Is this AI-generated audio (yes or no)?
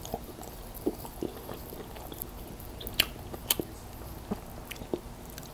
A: no